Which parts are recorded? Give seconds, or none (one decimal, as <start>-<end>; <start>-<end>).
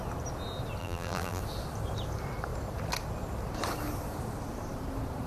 0.0-0.8; 1.4-5.3